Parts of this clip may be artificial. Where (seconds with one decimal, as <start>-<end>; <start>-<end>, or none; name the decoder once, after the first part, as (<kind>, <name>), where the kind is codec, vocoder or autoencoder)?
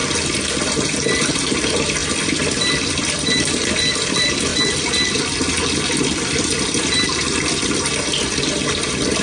0.5-4.5 (vocoder, BigVGAN v2); 6.0-7.2; 8.7-9.2